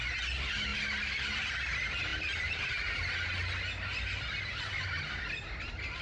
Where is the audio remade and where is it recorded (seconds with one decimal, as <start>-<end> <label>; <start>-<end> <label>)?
0.0-6.0 recorded

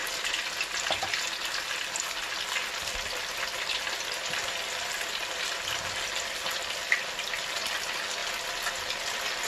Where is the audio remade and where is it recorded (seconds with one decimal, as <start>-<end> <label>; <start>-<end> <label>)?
0.0-9.5 recorded

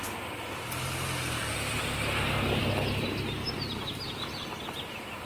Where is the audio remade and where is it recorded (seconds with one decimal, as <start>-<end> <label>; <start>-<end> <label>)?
0.0-5.3 recorded

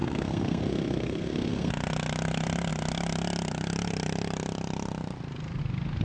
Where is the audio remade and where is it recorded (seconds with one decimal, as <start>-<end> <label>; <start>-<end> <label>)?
0.0-1.7 remade; 1.7-6.0 recorded

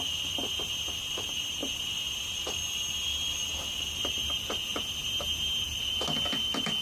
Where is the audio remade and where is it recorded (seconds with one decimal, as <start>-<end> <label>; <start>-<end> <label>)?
0.0-6.8 recorded

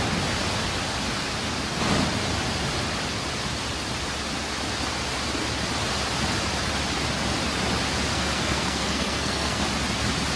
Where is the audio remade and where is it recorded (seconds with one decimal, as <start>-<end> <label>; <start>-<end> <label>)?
0.0-8.1 recorded; 8.1-9.6 remade; 9.6-10.4 recorded